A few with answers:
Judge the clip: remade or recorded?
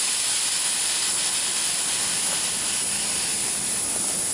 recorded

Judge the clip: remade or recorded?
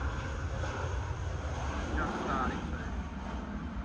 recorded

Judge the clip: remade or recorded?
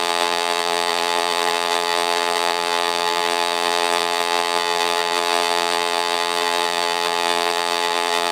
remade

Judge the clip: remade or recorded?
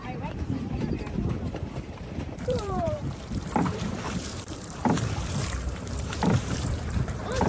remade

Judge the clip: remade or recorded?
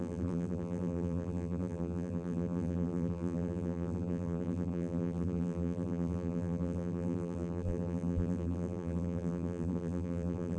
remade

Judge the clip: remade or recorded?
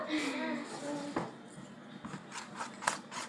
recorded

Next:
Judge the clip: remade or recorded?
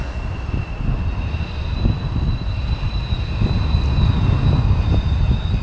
recorded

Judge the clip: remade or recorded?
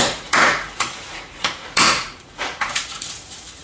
remade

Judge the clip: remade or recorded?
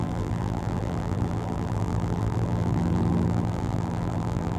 remade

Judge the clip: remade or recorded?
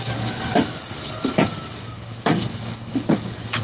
remade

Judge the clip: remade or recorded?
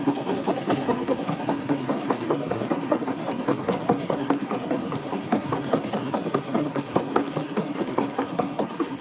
remade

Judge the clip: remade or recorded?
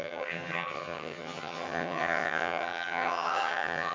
remade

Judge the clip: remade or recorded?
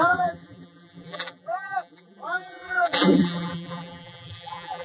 remade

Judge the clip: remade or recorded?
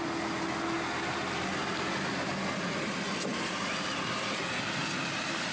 recorded